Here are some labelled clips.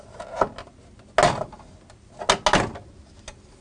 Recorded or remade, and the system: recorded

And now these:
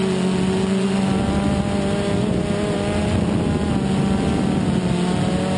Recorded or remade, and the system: recorded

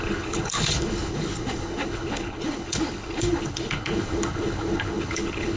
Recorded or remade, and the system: remade, codec, HILCodec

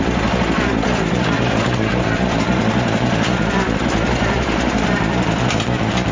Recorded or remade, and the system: recorded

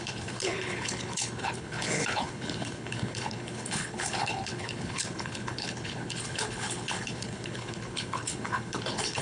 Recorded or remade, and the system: remade, codec, HILCodec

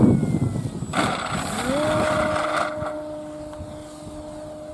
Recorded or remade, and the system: recorded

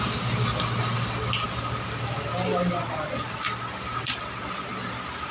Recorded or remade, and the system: recorded